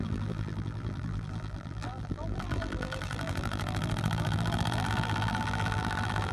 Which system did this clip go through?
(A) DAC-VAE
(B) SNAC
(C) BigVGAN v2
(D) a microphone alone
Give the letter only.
C